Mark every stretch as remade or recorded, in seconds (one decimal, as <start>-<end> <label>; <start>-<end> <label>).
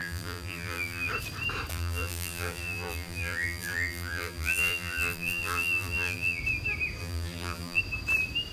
0.0-1.1 remade; 1.1-1.7 recorded; 1.7-6.4 remade; 6.4-7.0 recorded; 7.0-7.8 remade; 7.8-8.5 recorded